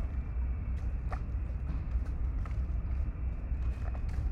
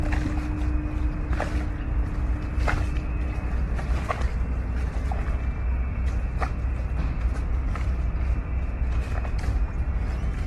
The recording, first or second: second